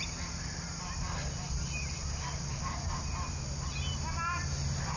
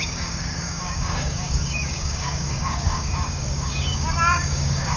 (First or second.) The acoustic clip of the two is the first